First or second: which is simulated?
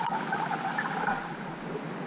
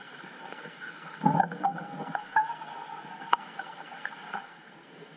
second